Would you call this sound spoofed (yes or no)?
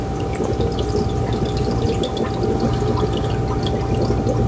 no